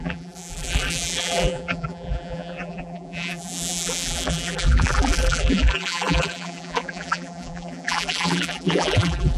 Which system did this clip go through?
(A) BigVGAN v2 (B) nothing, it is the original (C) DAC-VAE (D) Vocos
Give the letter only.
A